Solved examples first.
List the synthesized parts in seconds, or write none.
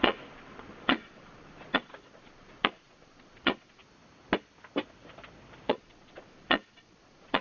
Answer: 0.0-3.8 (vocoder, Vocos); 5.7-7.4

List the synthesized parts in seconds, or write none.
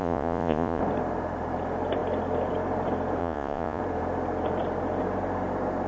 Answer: 0.0-0.8 (vocoder, Vocos); 3.2-3.8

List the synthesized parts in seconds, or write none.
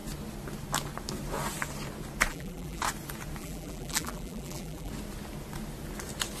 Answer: 2.3-2.8 (vocoder, BigVGAN v2); 3.4-4.9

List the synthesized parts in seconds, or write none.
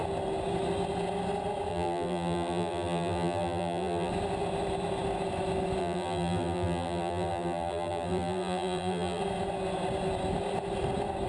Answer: 1.7-4.1 (vocoder, BigVGAN v2); 5.8-9.2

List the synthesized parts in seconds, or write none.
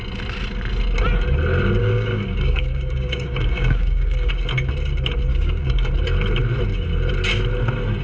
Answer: 1.8-4.3 (codec, DAC); 5.3-5.9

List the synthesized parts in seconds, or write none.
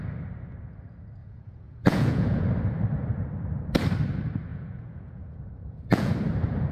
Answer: 1.2-2.4 (vocoder, Vocos); 4.5-6.1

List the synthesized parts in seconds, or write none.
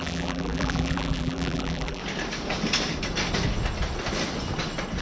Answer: 0.0-2.0 (vocoder, BigVGAN v2)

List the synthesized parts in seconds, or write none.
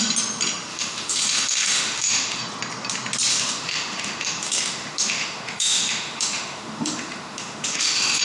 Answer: 0.7-2.4 (autoencoder, DAC-VAE); 3.3-8.2